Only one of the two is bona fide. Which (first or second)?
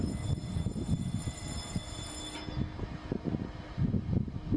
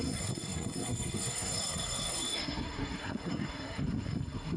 first